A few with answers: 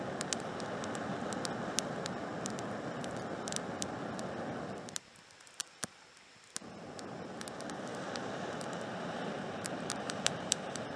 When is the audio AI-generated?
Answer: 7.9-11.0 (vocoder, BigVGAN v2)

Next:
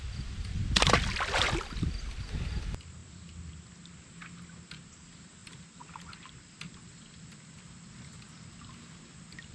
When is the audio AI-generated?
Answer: 3.0-3.9 (vocoder, BigVGAN v2); 5.4-8.6